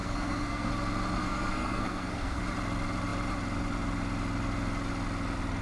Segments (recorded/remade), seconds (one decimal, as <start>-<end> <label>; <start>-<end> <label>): 0.0-0.7 remade; 0.7-1.2 recorded; 1.2-2.4 remade; 2.4-5.6 recorded